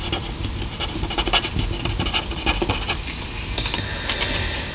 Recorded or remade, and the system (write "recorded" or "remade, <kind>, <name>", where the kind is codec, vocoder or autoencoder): recorded